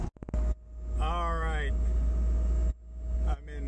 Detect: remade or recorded recorded